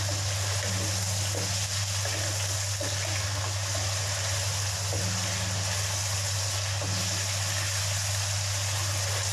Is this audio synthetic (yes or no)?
no